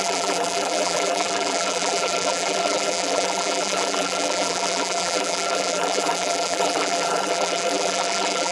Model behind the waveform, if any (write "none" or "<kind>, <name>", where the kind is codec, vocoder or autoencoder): vocoder, BigVGAN v2